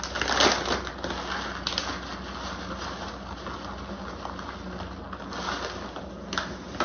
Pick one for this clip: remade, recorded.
recorded